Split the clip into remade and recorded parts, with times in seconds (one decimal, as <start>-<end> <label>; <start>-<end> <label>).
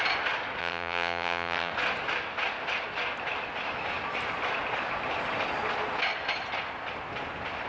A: 0.0-0.6 recorded; 0.6-1.7 remade; 1.7-7.7 recorded